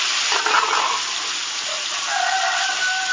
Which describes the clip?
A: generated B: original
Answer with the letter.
B